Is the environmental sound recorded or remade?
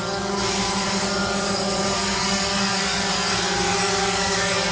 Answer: remade